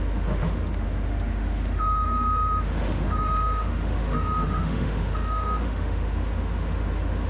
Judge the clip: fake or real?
fake